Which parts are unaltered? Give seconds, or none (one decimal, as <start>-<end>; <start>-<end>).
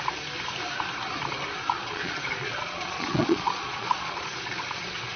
0.0-1.8